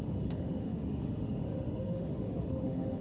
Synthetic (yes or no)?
yes